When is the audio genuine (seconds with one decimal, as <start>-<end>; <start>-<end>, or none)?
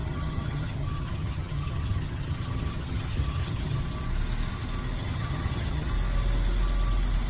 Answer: 3.8-5.0; 5.9-7.3